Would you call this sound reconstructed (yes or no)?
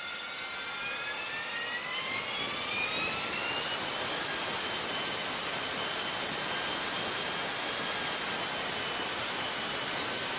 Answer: no